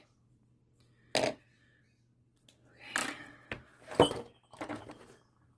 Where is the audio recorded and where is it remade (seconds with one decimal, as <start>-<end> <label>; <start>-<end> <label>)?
0.0-5.6 recorded